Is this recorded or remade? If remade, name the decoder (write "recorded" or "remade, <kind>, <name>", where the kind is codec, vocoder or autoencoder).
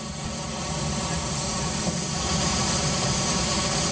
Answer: recorded